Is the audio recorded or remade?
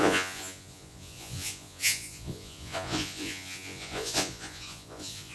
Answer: remade